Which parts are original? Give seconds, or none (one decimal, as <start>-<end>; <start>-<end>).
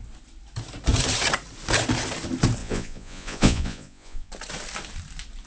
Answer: 0.0-2.6; 4.3-5.5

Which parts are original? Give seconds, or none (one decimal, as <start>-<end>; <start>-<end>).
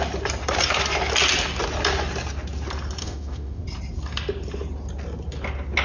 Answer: 0.0-3.0; 3.6-5.8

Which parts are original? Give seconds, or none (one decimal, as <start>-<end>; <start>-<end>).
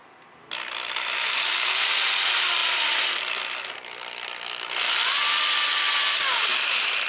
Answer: 0.0-7.1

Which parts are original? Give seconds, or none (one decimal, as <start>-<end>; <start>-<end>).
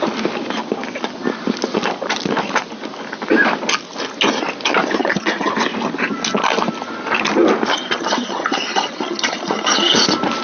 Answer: 0.0-5.0; 5.5-7.7; 10.0-10.4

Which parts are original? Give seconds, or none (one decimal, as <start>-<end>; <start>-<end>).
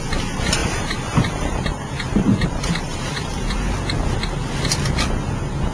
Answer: 0.0-0.6; 3.7-5.7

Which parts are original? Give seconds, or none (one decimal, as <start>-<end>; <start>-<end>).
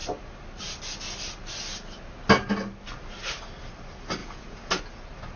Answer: 0.0-4.2; 4.8-5.4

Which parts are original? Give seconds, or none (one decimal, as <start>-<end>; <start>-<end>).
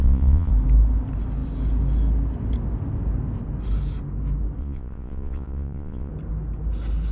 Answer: 0.5-4.6; 6.1-7.1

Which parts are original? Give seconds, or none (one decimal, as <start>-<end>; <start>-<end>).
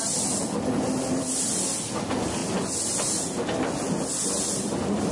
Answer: 2.4-4.5